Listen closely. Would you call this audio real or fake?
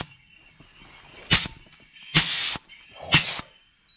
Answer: real